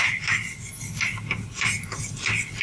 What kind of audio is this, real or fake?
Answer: real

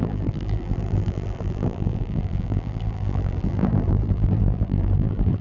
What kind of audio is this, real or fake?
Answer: fake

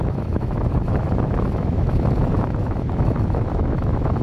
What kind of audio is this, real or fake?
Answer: fake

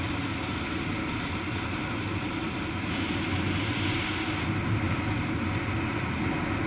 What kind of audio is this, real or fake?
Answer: real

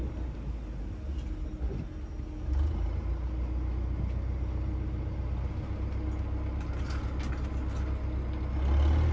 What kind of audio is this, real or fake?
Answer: real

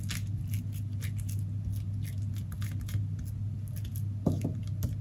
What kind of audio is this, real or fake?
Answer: real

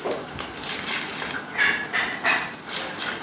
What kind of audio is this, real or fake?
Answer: real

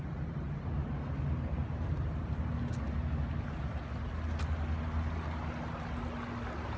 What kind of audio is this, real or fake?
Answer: real